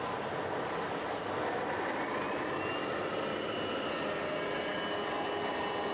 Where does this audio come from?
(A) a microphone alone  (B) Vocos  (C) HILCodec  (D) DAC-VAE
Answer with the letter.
A